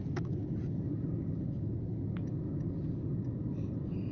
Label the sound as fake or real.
real